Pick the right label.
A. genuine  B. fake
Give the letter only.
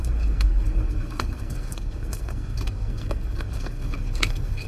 B